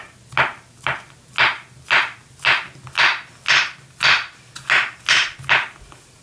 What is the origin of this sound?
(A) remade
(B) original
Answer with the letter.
B